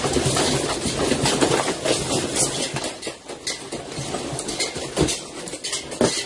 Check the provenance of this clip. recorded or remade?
recorded